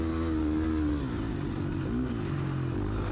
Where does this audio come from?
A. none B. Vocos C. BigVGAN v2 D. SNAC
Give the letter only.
A